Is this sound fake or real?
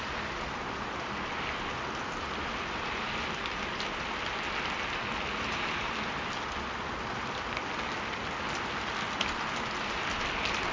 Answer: real